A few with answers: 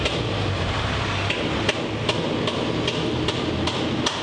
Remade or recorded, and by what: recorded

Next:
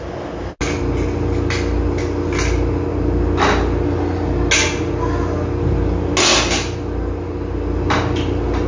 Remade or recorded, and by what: recorded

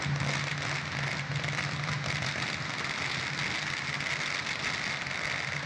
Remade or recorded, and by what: recorded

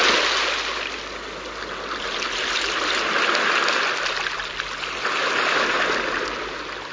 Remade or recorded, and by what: recorded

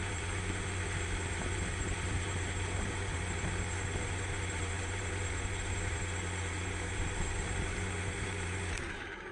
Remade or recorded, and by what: remade, vocoder, BigVGAN v2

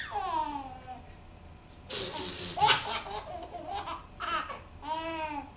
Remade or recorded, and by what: recorded